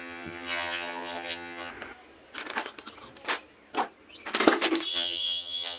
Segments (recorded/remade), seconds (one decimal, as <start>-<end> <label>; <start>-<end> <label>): 0.0-1.7 remade; 1.7-4.9 recorded; 4.9-5.8 remade